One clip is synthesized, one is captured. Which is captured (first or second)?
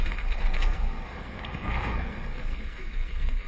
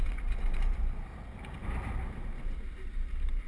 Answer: second